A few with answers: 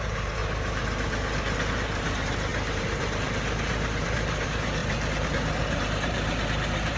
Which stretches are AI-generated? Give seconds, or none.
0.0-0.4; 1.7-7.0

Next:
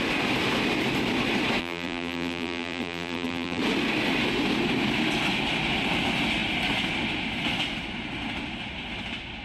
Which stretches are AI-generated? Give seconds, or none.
1.6-3.6